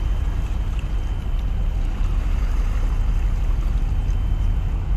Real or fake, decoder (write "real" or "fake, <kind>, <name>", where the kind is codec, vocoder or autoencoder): real